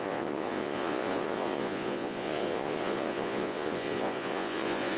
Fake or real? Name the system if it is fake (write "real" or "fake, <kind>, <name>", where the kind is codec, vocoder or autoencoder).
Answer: fake, vocoder, Vocos